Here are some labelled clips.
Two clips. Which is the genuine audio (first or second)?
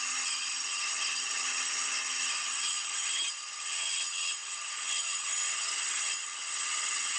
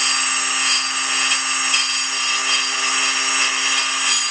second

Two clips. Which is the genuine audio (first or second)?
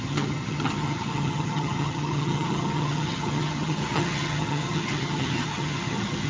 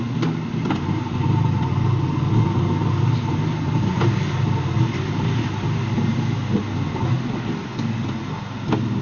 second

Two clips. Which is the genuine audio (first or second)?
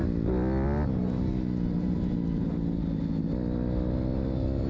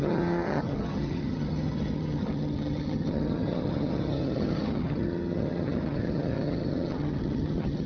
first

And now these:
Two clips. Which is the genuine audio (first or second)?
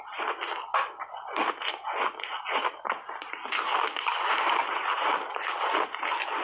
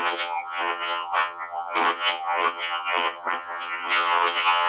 first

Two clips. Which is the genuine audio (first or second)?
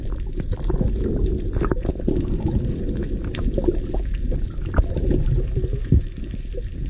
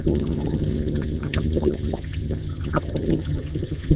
first